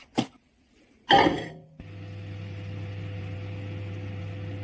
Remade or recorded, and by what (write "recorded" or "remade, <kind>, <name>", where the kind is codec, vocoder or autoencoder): recorded